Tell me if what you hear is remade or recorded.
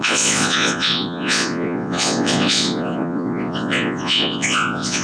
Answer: remade